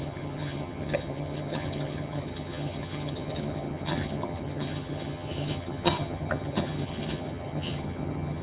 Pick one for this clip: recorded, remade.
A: remade